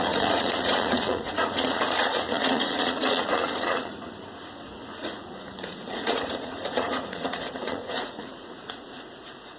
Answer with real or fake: fake